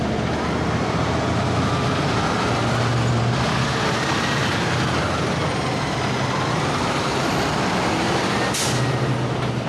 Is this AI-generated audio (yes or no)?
no